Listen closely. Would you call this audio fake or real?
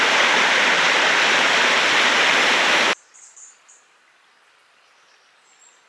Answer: real